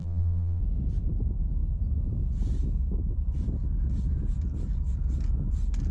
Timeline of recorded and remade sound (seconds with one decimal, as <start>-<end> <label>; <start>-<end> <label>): 0.0-0.6 remade; 0.6-5.9 recorded